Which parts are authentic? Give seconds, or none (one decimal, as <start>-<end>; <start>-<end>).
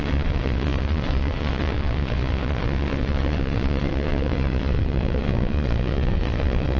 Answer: none